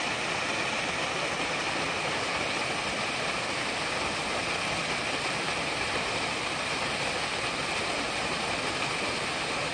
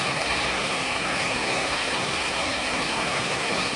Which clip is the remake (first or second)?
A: second